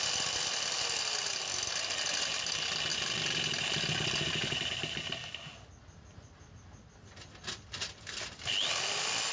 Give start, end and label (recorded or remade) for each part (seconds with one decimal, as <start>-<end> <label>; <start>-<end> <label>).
0.0-9.3 recorded